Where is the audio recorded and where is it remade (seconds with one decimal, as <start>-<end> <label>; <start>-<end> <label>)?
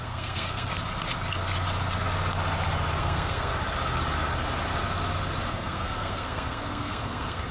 0.0-0.7 remade; 0.7-3.0 recorded; 3.0-3.5 remade; 3.5-5.5 recorded; 5.5-7.5 remade